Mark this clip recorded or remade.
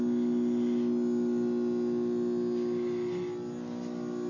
recorded